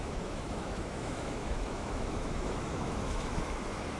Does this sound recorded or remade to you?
remade